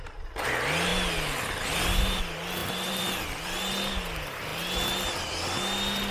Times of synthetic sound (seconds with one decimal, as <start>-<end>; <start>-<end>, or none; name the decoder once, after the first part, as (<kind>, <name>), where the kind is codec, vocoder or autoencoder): 0.9-2.2 (vocoder, BigVGAN v2); 2.6-3.6